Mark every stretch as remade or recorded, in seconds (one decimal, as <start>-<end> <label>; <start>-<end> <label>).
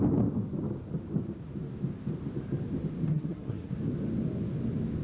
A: 0.0-3.1 recorded; 3.1-3.7 remade; 3.7-5.0 recorded